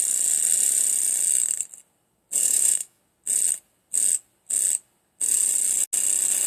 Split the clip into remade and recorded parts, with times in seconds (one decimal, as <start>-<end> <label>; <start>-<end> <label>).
0.0-2.4 recorded; 2.4-3.0 remade; 3.0-6.5 recorded